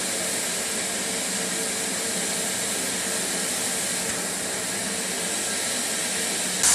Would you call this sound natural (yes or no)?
yes